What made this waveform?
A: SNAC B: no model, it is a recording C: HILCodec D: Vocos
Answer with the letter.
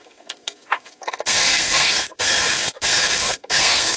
A